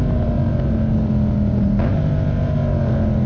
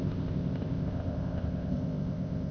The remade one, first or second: second